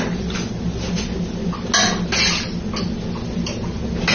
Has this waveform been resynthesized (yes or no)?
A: no